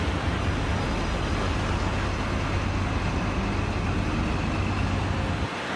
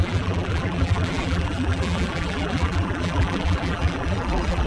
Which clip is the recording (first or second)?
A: first